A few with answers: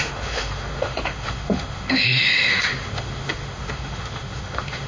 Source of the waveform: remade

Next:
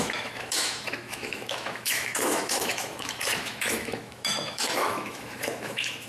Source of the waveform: remade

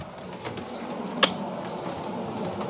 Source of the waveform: recorded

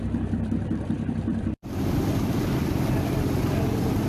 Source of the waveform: remade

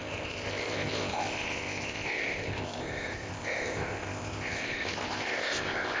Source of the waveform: remade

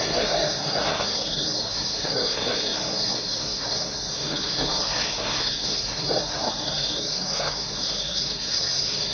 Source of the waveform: remade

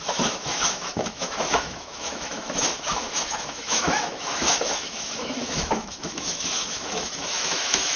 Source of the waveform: remade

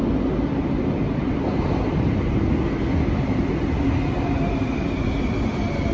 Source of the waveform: recorded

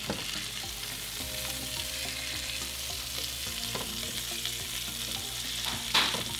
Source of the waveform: recorded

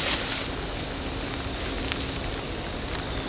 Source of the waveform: recorded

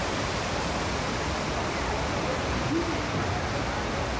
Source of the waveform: recorded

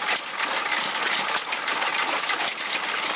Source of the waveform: recorded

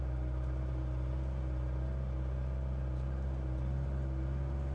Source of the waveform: recorded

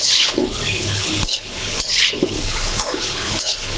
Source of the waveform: remade